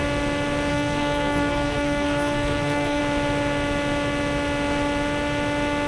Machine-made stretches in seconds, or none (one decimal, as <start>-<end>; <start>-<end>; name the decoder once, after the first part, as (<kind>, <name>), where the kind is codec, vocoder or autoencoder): 0.7-3.0 (codec, SNAC)